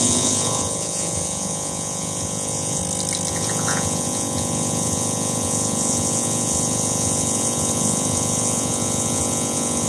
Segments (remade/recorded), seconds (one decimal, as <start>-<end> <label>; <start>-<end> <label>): 0.0-2.8 remade; 2.8-3.3 recorded; 3.3-9.9 remade